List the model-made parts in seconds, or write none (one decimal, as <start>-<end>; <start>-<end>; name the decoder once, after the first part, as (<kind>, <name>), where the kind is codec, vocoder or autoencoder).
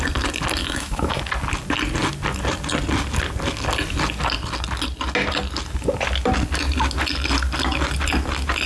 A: 0.6-1.2 (autoencoder, DAC-VAE)